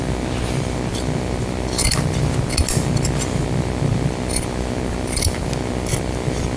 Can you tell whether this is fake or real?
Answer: real